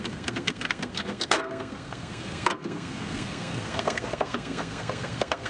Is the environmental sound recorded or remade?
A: remade